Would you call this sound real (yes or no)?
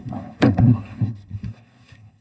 no